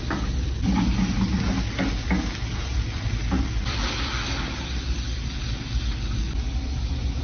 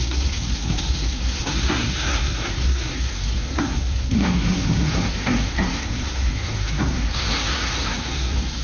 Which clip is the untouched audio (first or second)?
first